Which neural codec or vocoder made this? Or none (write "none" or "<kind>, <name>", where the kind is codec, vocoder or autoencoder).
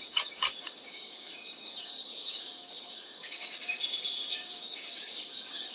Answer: codec, DAC